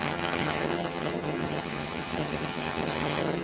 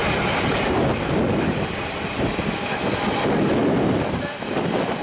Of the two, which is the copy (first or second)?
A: first